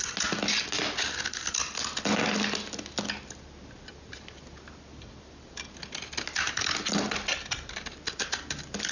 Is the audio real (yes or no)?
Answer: yes